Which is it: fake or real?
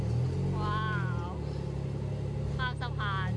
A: real